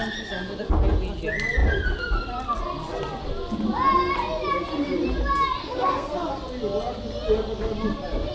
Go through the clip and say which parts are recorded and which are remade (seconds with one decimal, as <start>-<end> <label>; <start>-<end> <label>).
0.0-5.6 recorded; 5.6-6.3 remade; 6.3-8.3 recorded